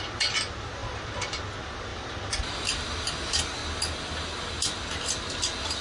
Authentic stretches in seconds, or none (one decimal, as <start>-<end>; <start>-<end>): 0.0-0.8; 1.4-1.9; 3.1-5.8